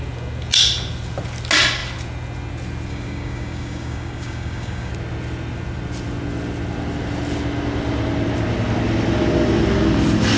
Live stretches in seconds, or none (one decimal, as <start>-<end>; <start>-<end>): 0.0-2.9; 4.9-10.4